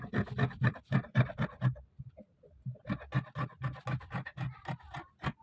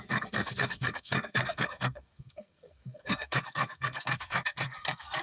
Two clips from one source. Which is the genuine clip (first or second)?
first